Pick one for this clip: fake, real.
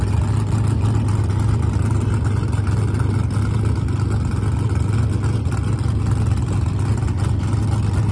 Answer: real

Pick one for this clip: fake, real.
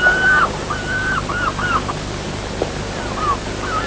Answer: real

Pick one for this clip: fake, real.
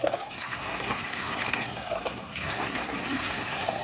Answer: fake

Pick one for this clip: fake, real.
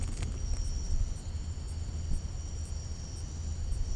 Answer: real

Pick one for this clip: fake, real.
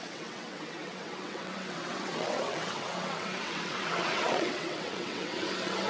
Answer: fake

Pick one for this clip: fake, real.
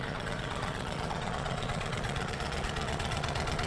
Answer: fake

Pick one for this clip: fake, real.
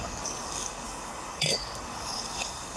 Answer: fake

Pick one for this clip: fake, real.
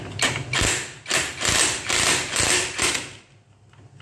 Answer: real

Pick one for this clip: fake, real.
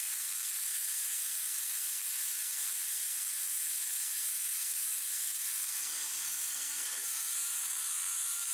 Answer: fake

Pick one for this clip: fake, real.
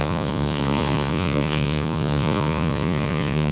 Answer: fake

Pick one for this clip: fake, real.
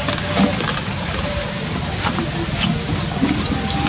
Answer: real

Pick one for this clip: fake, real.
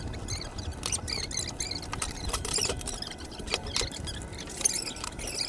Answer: real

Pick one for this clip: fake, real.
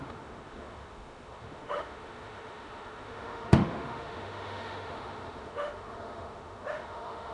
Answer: fake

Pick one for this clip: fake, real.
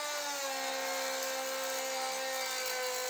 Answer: real